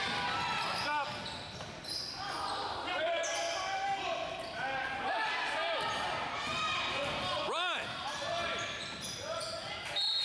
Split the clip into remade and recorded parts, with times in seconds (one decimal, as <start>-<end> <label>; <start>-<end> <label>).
0.0-10.2 recorded